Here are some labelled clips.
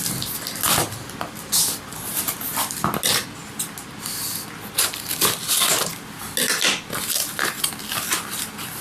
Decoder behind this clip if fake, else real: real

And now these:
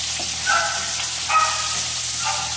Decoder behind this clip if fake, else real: real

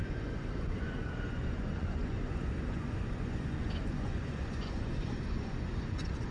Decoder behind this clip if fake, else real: fake, vocoder, Vocos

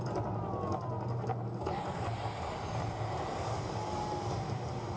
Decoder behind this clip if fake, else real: real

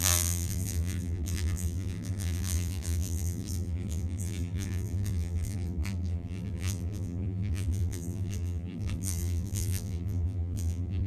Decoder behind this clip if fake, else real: fake, vocoder, BigVGAN v2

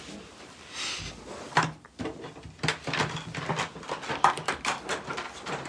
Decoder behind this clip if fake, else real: real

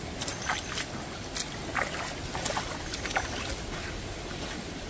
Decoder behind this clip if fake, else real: real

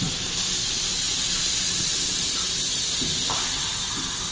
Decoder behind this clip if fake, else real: real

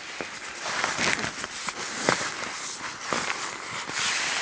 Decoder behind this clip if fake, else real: real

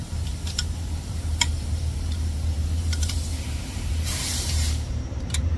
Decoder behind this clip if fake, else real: fake, vocoder, BigVGAN v2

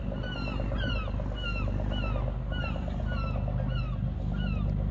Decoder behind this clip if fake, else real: real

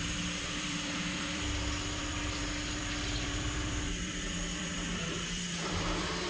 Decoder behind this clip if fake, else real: fake, vocoder, BigVGAN v2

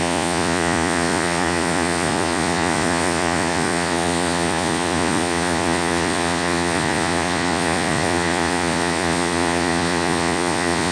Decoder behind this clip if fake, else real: fake, vocoder, Vocos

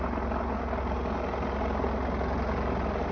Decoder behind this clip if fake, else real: real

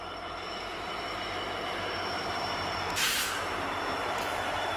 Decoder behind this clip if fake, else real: fake, vocoder, BigVGAN v2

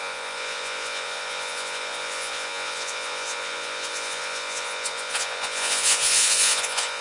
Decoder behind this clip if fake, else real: fake, vocoder, Vocos